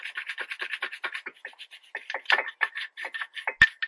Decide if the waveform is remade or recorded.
recorded